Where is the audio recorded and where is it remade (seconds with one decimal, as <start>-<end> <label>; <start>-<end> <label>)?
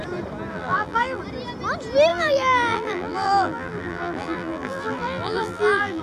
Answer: 0.0-0.5 recorded; 0.5-1.2 remade; 1.2-2.1 recorded; 2.1-6.0 remade